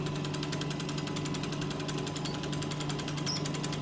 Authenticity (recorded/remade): recorded